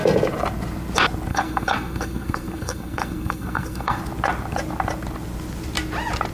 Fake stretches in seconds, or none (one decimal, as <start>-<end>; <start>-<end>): 1.3-4.0

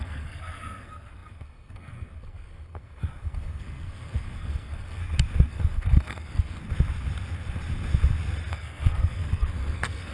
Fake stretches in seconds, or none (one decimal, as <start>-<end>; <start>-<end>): 0.0-5.0; 5.5-6.6; 8.5-10.1

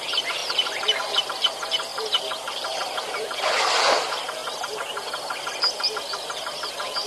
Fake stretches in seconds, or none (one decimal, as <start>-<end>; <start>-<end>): 0.0-4.4

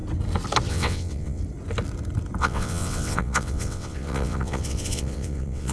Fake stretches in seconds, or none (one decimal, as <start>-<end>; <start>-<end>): 0.7-1.4; 2.4-5.7

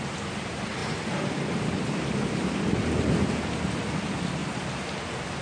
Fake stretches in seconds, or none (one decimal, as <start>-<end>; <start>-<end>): 0.0-4.4; 4.9-5.4

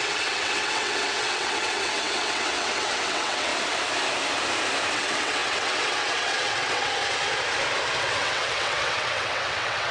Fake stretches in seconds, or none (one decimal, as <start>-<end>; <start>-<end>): 0.0-3.5; 4.9-7.0; 8.0-9.9